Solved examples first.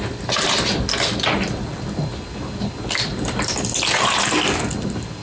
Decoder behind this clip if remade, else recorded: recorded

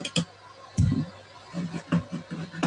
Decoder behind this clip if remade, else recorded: recorded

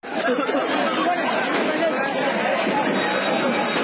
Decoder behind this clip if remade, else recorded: recorded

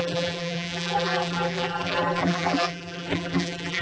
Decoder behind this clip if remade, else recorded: remade, vocoder, BigVGAN v2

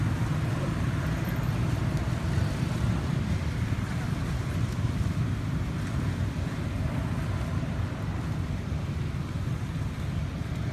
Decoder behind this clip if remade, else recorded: remade, vocoder, BigVGAN v2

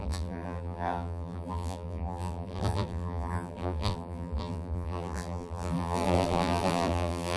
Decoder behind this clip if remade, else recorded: remade, vocoder, BigVGAN v2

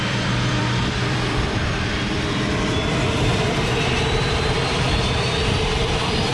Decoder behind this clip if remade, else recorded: remade, vocoder, BigVGAN v2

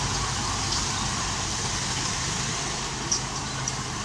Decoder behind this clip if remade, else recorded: remade, vocoder, BigVGAN v2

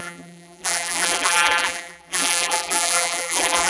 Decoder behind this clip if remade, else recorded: remade, vocoder, BigVGAN v2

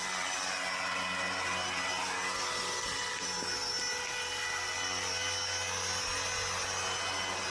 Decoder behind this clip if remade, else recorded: recorded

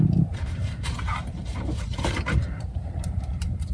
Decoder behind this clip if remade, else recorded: remade, vocoder, BigVGAN v2